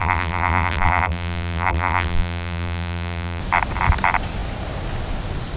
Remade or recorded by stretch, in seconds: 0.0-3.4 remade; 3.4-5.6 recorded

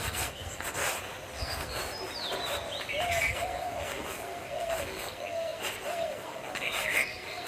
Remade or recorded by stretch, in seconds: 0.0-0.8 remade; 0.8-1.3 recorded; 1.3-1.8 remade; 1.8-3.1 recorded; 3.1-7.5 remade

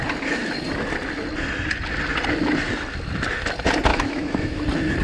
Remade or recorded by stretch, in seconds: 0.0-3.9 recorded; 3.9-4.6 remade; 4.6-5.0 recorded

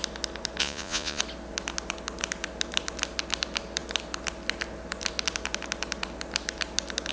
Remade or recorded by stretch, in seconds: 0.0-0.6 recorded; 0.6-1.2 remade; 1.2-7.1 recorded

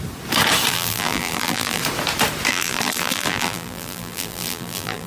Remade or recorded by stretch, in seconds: 0.0-0.7 recorded; 0.7-1.8 remade; 1.8-2.5 recorded; 2.5-5.1 remade